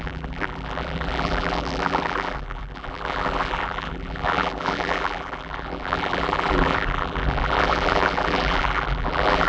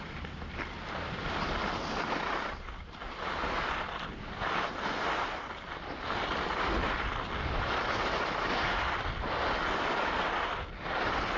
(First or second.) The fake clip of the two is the first